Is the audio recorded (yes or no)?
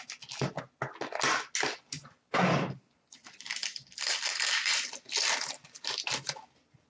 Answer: yes